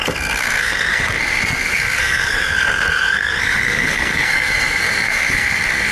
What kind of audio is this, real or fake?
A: fake